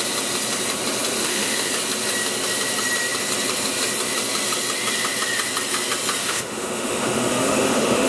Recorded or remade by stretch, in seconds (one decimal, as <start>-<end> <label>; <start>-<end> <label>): 0.0-1.2 recorded; 1.2-1.7 remade; 1.7-6.2 recorded; 6.2-8.1 remade